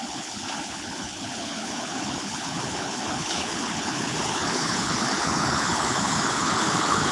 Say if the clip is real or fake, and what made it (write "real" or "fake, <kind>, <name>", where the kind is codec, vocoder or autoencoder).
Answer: fake, codec, HILCodec